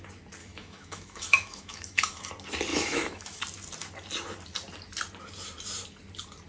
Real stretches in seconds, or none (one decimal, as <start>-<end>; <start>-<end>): 0.0-0.4; 2.3-2.7; 3.4-6.5

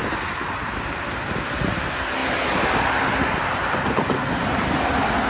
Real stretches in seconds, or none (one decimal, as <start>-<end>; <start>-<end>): 0.0-5.3

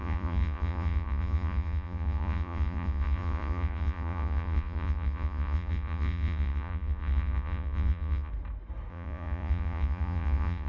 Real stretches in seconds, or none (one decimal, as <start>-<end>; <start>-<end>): 8.3-8.9

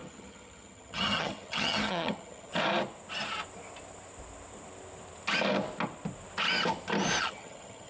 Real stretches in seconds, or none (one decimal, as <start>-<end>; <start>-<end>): 2.5-7.2

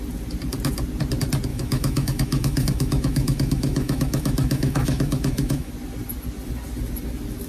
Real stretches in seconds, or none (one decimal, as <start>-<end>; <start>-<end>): 0.0-1.5; 5.7-7.5